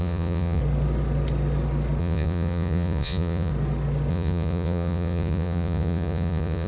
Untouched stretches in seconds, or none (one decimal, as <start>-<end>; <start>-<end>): 0.6-2.0; 3.5-4.1